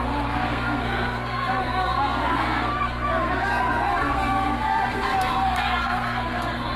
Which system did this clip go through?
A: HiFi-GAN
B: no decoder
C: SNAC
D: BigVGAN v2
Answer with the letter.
C